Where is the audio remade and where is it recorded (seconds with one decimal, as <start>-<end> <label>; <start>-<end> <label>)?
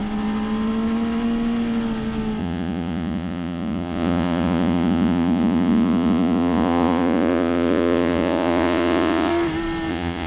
0.0-2.4 recorded; 2.4-9.3 remade; 9.3-9.9 recorded; 9.9-10.3 remade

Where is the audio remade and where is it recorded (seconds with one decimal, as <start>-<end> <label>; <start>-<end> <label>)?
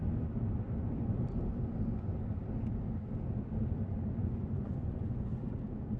0.0-4.2 recorded; 4.2-5.3 remade; 5.3-6.0 recorded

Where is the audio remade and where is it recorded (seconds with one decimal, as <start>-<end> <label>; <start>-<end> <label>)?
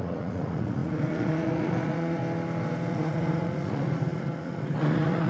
0.0-2.2 remade; 2.2-2.9 recorded; 2.9-5.3 remade